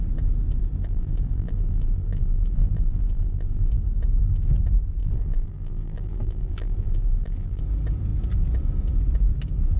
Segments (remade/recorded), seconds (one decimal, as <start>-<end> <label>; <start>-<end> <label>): 0.0-0.8 recorded; 0.8-3.7 remade; 3.7-5.0 recorded; 5.0-7.6 remade; 7.6-9.8 recorded